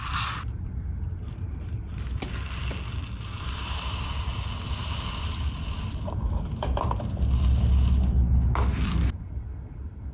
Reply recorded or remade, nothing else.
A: recorded